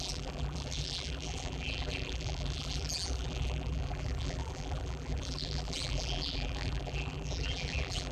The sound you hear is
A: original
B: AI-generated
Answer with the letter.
B